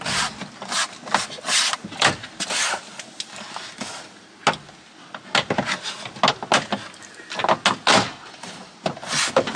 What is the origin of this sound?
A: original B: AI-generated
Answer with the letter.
A